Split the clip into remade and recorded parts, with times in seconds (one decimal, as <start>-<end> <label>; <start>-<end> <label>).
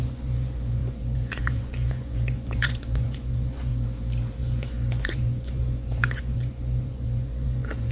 0.0-3.7 remade; 3.7-4.4 recorded; 4.4-7.9 remade